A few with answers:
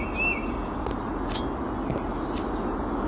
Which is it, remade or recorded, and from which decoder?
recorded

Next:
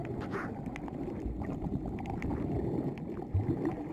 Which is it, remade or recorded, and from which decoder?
recorded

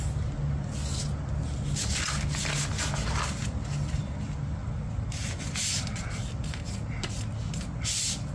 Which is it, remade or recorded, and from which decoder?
recorded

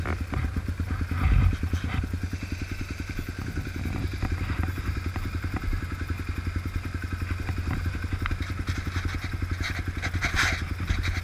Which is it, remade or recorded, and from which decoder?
recorded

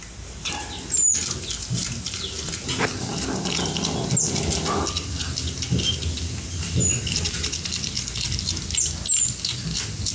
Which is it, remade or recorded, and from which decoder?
recorded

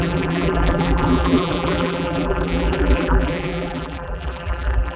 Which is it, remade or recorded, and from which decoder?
remade, vocoder, BigVGAN v2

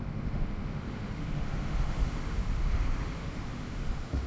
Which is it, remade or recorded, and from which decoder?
remade, autoencoder, DAC-VAE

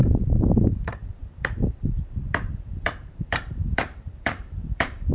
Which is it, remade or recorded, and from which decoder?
remade, vocoder, BigVGAN v2